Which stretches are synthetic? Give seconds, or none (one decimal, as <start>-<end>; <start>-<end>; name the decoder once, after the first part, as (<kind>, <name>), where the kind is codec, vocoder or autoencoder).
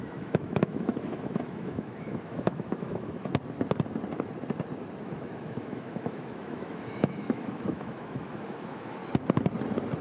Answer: 0.0-3.3 (autoencoder, DAC-VAE); 5.0-9.0